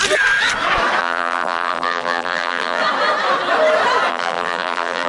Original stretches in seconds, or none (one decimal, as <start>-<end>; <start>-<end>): 0.0-1.0; 2.8-4.1